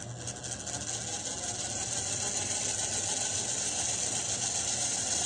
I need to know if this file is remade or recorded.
recorded